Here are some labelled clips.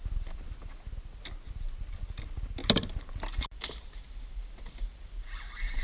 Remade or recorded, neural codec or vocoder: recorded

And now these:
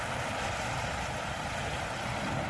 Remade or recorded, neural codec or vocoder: recorded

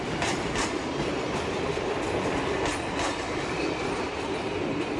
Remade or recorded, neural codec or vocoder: recorded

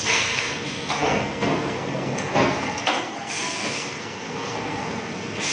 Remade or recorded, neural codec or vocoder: remade, codec, SNAC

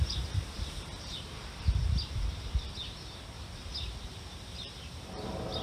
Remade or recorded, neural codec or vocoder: remade, vocoder, BigVGAN v2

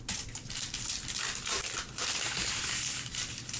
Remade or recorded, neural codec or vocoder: remade, vocoder, BigVGAN v2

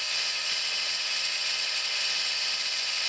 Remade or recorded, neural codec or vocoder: remade, vocoder, HiFi-GAN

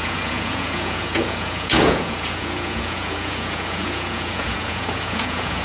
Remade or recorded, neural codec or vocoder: remade, vocoder, Vocos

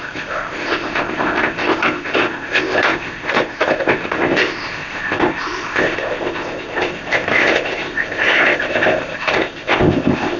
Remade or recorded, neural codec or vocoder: remade, codec, ZipCodec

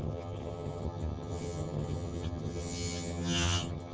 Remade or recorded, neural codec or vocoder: remade, vocoder, HiFi-GAN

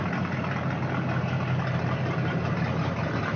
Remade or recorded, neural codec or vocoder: recorded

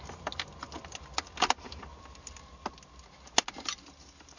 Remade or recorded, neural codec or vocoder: recorded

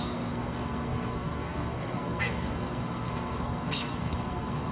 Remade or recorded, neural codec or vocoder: remade, codec, SNAC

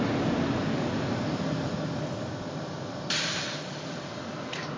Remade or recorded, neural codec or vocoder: recorded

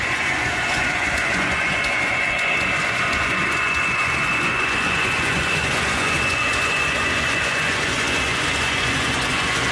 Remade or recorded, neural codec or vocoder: remade, vocoder, Vocos